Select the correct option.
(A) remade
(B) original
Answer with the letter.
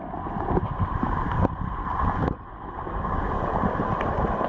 B